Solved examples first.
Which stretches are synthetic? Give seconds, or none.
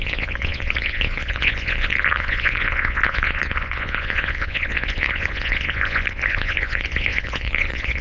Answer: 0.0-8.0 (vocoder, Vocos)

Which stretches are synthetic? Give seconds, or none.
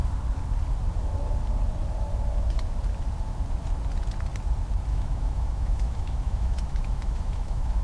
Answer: 4.9-7.8 (autoencoder, DAC-VAE)